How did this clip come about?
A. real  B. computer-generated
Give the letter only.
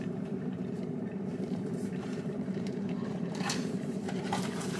B